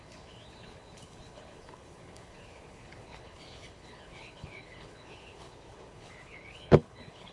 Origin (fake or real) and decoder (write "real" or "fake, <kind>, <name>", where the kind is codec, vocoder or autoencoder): fake, codec, HILCodec